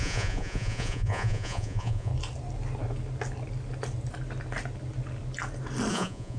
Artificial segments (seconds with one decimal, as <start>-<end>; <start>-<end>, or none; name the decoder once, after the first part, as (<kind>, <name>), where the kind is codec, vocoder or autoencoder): 0.0-2.1 (vocoder, Vocos); 5.9-6.4